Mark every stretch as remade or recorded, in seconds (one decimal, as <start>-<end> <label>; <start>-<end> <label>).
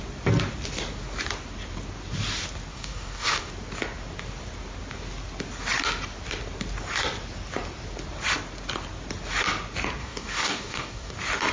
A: 0.0-2.7 recorded; 2.7-3.5 remade; 3.5-10.0 recorded; 10.0-11.1 remade; 11.1-11.5 recorded